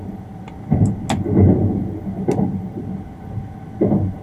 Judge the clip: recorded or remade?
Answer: recorded